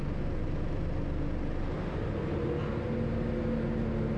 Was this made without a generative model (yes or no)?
yes